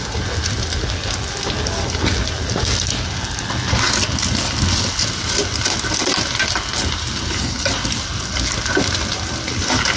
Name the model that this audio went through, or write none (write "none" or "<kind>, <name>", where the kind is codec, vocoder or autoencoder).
none